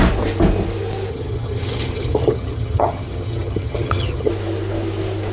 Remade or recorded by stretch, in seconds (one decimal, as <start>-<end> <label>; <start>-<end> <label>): 0.0-1.1 recorded; 1.1-4.3 remade; 4.3-5.3 recorded